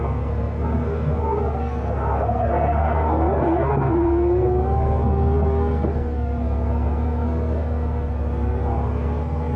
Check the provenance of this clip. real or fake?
fake